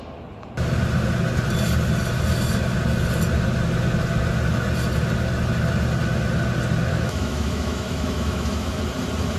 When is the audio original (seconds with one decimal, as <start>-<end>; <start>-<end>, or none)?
0.0-6.9; 8.8-9.4